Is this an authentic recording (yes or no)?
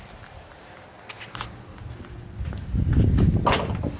yes